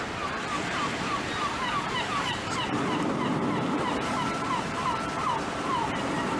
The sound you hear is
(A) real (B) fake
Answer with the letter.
B